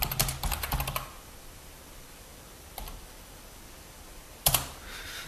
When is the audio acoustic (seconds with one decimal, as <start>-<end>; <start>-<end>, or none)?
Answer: 0.0-5.3

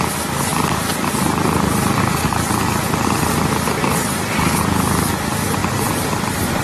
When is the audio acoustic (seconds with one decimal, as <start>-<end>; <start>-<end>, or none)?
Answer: 0.0-0.5; 2.0-3.8; 4.6-5.6

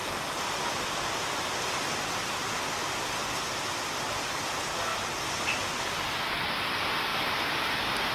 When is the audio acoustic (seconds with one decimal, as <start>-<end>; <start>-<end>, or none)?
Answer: 1.4-7.1

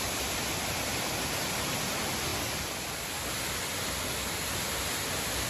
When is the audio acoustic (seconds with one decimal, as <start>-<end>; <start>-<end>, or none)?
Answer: 0.0-2.3; 3.4-5.5

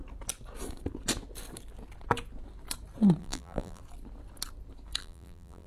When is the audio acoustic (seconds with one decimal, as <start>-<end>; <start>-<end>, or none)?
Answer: 0.0-3.2; 3.8-5.0

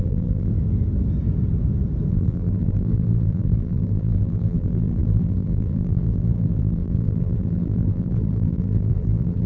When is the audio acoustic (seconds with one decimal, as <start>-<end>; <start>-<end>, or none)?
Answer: 0.5-2.1